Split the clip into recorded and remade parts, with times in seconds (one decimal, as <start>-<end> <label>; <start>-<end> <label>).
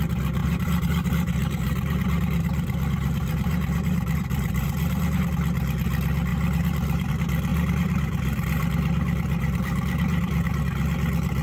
0.0-0.4 recorded; 0.4-5.3 remade; 5.3-6.3 recorded; 6.3-7.1 remade; 7.1-7.5 recorded; 7.5-10.6 remade; 10.6-11.4 recorded